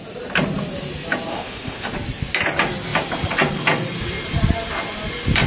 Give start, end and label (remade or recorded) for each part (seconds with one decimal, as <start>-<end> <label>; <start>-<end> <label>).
0.0-1.3 recorded; 1.3-1.9 remade; 1.9-5.5 recorded